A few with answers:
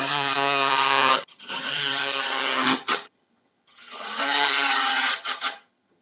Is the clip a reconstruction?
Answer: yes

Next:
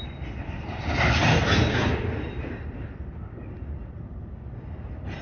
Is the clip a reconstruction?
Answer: no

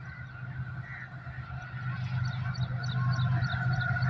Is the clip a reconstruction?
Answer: no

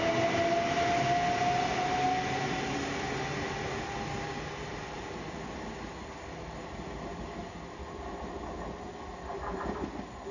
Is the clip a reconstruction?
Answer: no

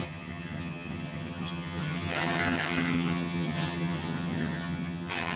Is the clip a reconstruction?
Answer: yes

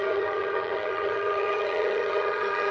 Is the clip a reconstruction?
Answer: yes